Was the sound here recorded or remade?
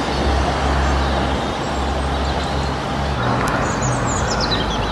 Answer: recorded